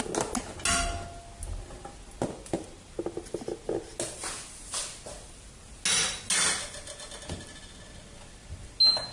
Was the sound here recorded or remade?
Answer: recorded